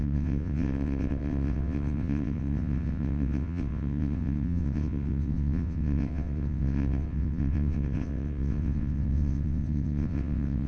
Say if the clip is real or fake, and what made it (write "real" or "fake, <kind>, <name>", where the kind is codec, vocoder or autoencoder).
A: fake, vocoder, WaveNeXt